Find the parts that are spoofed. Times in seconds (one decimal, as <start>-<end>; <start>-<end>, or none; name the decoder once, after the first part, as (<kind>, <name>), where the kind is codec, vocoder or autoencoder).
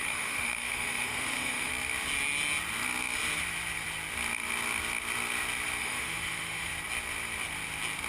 0.0-1.7 (autoencoder, DAC-VAE); 5.8-6.7